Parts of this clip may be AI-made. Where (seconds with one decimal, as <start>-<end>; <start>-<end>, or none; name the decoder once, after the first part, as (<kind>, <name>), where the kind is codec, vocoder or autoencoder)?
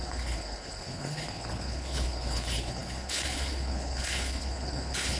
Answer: 0.0-5.2 (codec, HILCodec)